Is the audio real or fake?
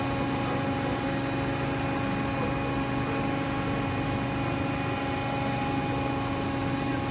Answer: real